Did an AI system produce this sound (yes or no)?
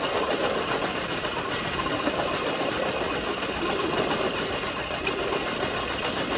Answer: no